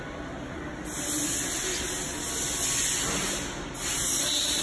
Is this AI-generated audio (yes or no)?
no